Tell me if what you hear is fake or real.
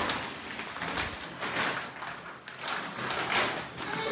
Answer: real